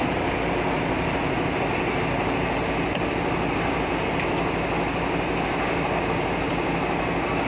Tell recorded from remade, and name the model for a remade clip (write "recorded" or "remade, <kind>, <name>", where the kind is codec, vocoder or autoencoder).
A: recorded